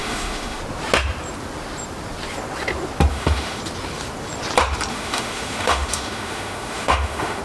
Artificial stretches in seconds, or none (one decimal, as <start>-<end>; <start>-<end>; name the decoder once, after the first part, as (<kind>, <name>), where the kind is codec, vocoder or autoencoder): 0.0-0.6 (autoencoder, DAC-VAE); 3.1-3.6; 4.9-7.4